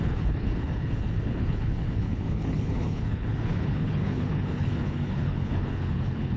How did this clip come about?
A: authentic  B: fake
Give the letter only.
B